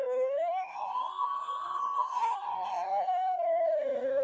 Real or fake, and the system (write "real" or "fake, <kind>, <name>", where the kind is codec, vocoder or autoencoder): fake, codec, SNAC